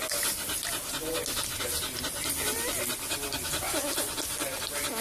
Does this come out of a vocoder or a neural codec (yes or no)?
no